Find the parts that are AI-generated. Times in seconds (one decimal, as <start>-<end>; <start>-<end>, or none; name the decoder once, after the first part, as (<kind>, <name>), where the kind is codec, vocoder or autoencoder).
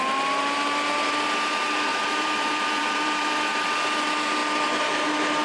1.9-3.7 (vocoder, BigVGAN v2)